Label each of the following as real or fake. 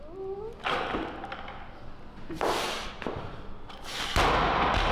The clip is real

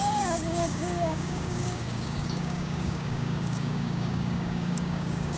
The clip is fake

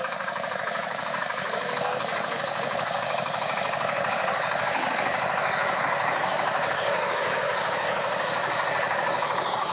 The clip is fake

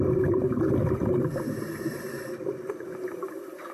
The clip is real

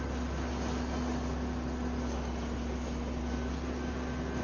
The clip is real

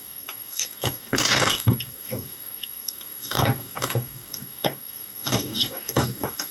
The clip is fake